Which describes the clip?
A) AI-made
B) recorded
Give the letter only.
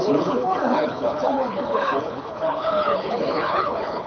A